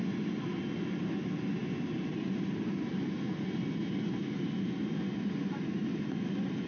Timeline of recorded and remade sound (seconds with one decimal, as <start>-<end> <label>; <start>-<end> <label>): 0.0-6.7 recorded